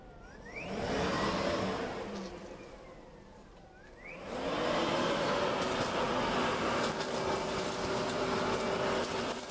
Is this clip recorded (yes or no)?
yes